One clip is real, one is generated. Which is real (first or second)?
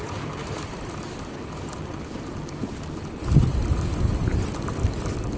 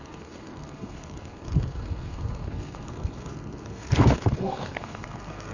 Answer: first